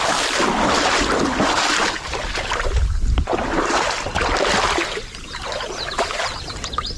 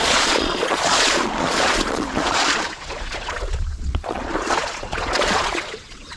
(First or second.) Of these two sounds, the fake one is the second